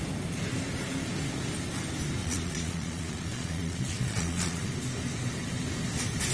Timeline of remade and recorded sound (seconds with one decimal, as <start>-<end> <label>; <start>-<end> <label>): 0.0-2.2 recorded; 2.2-4.7 remade; 4.7-6.3 recorded